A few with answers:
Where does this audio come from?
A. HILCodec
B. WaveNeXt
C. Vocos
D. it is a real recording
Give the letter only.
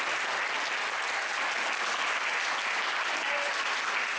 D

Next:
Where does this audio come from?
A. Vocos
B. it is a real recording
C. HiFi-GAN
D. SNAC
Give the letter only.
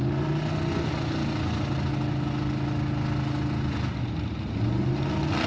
B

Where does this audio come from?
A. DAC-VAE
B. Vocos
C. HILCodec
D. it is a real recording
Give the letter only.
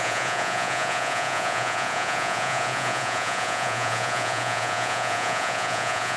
B